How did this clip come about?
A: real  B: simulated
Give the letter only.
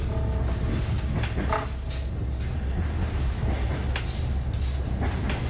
A